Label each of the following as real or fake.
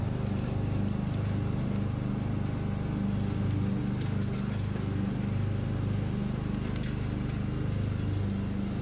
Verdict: real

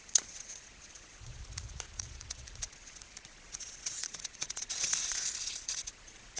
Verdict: fake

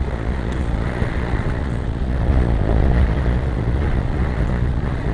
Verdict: fake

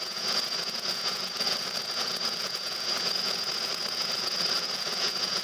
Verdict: fake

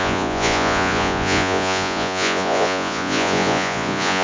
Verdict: fake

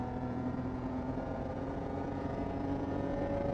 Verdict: fake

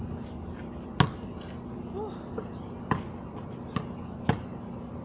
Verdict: real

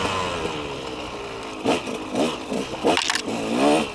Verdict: real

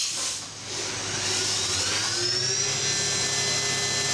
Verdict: real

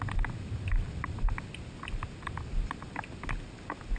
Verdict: real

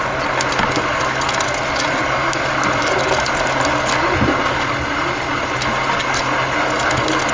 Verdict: real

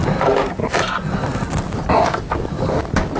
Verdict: real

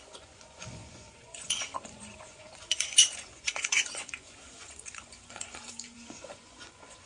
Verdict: fake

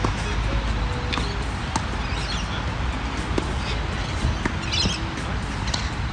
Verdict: real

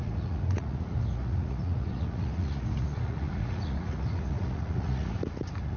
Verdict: fake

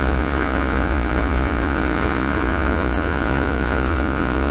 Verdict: fake